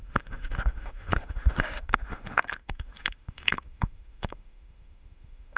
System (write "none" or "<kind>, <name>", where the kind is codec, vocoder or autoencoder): autoencoder, DAC-VAE